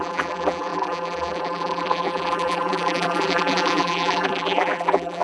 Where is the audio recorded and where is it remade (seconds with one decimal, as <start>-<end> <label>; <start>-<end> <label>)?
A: 0.0-5.2 remade